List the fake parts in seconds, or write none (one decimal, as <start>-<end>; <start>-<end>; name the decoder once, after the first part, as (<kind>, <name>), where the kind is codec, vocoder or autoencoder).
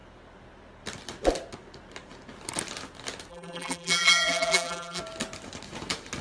3.3-5.0 (vocoder, BigVGAN v2)